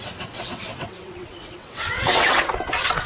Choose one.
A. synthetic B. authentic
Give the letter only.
A